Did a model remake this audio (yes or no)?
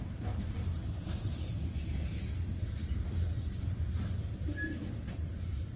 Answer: no